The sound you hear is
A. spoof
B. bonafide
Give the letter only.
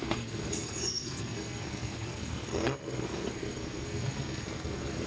A